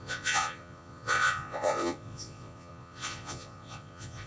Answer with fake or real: fake